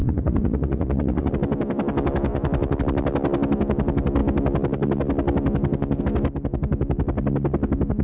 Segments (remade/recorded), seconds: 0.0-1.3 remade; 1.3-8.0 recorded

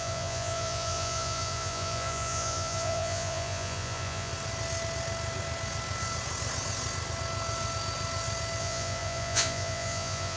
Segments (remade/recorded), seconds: 0.0-4.3 remade; 4.3-8.6 recorded; 8.6-10.4 remade

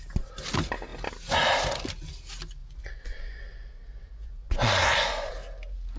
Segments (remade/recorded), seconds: 0.0-2.6 recorded; 2.6-5.3 remade; 5.3-6.0 recorded

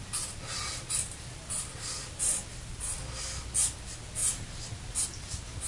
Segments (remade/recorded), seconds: 0.0-0.7 recorded; 0.7-3.0 remade; 3.0-5.7 recorded

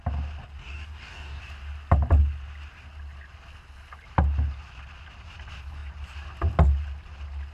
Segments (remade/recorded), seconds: 0.0-0.6 recorded; 0.6-1.4 remade; 1.4-7.5 recorded

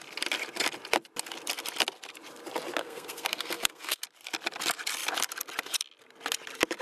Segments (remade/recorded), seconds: 0.0-2.8 recorded; 2.8-4.0 remade; 4.0-6.8 recorded

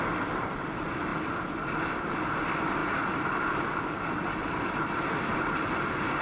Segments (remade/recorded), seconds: 0.0-6.2 recorded